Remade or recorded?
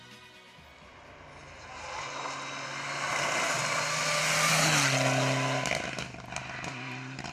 recorded